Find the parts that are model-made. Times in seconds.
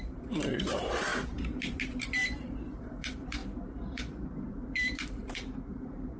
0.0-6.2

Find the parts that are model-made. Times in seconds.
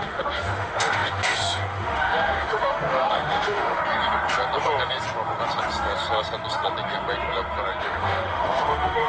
0.0-3.8; 7.8-9.1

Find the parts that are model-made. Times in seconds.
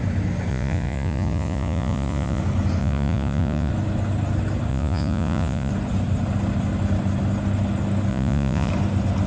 0.5-2.4; 2.8-3.7; 4.7-5.7; 8.1-8.7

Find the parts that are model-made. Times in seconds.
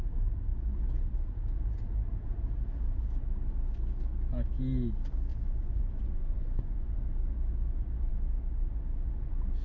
5.3-7.0